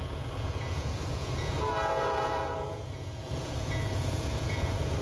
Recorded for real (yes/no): no